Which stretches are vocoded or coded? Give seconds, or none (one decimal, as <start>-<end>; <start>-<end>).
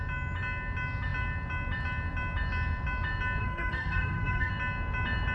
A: 3.4-4.5